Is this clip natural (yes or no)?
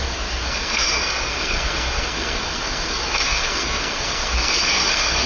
no